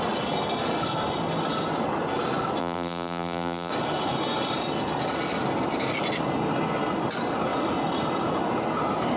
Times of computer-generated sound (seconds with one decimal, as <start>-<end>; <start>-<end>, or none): 2.6-3.7